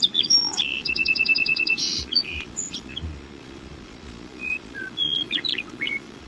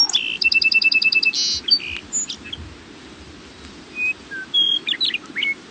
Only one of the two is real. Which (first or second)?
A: second